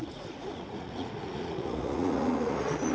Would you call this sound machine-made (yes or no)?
yes